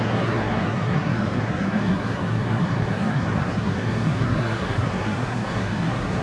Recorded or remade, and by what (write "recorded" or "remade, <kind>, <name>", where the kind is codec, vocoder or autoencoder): remade, codec, SNAC